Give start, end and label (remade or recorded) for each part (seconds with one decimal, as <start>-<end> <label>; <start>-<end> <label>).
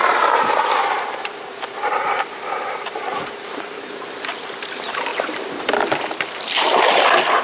0.0-3.8 remade; 3.8-5.1 recorded; 5.1-5.8 remade; 5.8-7.4 recorded